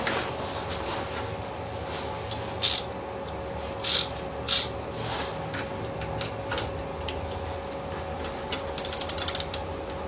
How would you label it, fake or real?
real